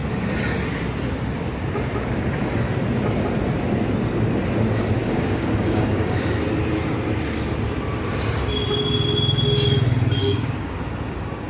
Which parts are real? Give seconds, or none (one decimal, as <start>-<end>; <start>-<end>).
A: 0.0-5.0; 6.3-10.2; 10.8-11.5